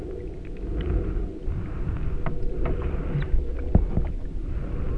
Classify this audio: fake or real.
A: real